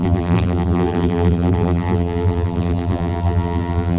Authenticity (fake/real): fake